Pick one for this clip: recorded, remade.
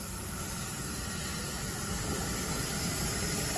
recorded